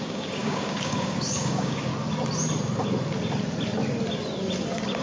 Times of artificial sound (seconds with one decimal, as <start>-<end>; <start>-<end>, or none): 0.0-1.9